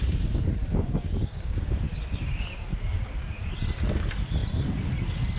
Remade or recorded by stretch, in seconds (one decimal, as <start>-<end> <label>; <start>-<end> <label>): 0.0-0.7 recorded; 0.7-1.9 remade; 1.9-2.7 recorded; 2.7-3.5 remade; 3.5-5.4 recorded